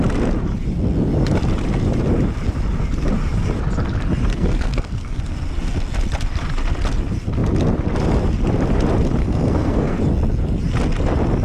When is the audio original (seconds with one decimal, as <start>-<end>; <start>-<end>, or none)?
0.0-4.3; 5.2-9.2; 10.0-11.4